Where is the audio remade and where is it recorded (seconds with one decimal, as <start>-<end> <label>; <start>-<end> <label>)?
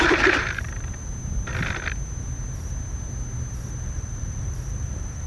0.0-1.1 remade; 1.1-3.8 recorded; 3.8-5.3 remade